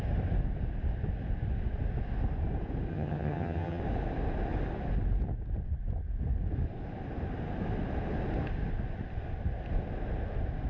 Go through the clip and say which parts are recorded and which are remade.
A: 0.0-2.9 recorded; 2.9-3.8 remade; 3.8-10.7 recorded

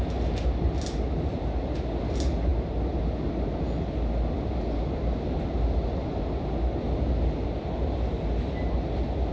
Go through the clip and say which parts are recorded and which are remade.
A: 0.0-9.3 recorded

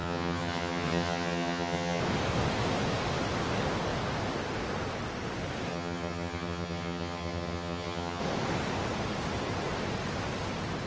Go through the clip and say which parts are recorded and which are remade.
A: 0.0-2.0 remade; 2.0-5.7 recorded; 5.7-8.2 remade; 8.2-10.9 recorded

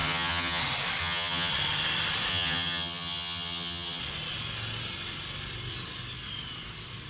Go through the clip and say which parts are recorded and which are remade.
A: 0.0-0.6 remade; 0.6-1.0 recorded; 1.0-1.5 remade; 1.5-2.3 recorded; 2.3-4.0 remade; 4.0-7.1 recorded

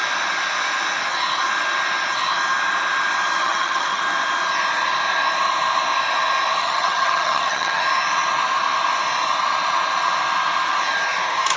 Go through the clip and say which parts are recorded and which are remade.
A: 0.0-3.4 recorded; 3.4-4.0 remade; 4.0-6.6 recorded; 6.6-7.8 remade; 7.8-11.6 recorded

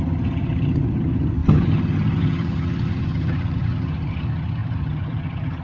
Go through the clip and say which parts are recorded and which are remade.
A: 0.0-5.6 remade